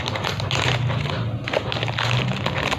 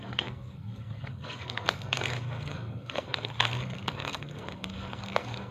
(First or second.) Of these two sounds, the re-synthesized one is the second